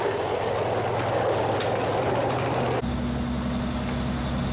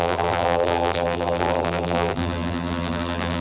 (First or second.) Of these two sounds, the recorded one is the first